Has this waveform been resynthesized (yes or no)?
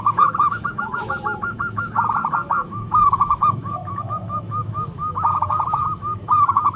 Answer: yes